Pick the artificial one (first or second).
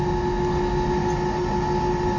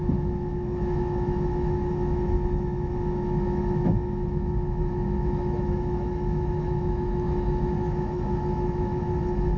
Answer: second